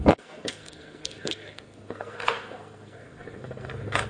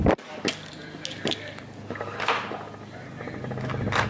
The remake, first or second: first